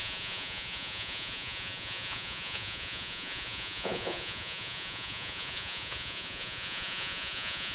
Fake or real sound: fake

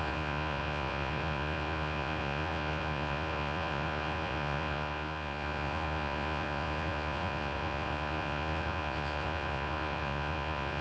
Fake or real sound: fake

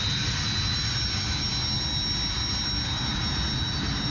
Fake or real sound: real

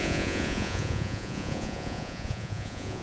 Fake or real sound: fake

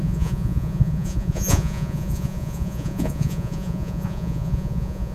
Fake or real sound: fake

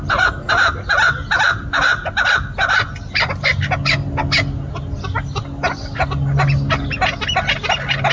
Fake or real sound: real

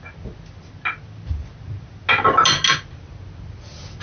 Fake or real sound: real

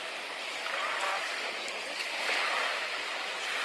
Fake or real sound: real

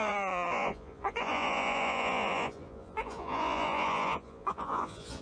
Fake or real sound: fake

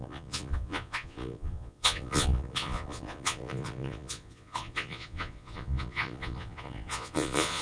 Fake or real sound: fake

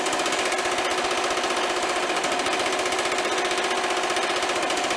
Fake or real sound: real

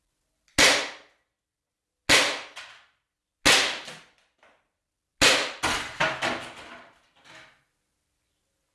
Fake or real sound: real